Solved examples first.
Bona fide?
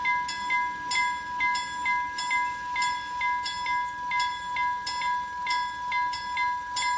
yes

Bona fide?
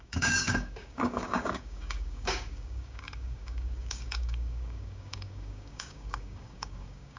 no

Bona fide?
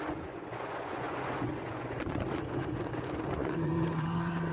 no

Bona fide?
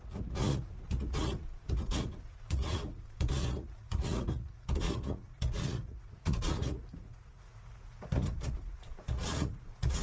no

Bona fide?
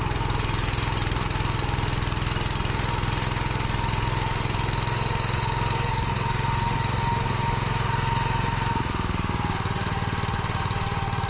yes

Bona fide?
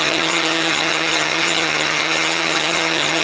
no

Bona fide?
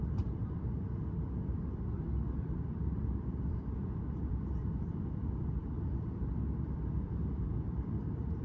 no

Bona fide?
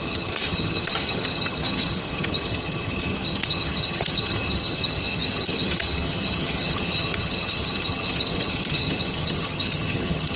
no